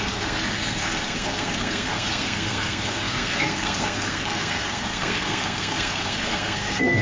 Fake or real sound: fake